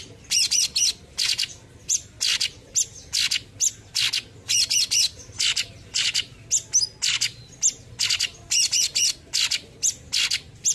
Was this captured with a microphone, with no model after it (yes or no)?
yes